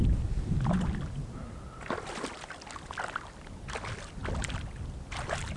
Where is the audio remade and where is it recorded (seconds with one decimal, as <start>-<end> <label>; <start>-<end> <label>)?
0.0-5.6 recorded